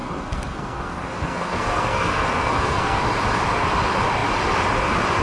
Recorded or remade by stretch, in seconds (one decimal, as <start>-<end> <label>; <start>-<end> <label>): 0.0-3.0 remade; 3.0-5.2 recorded